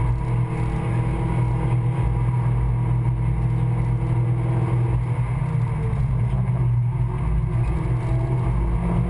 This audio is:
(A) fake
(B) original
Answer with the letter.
B